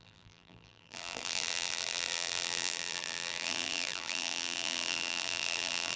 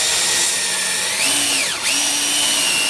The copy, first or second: first